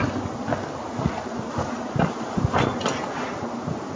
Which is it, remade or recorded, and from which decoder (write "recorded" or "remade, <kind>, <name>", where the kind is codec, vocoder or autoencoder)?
recorded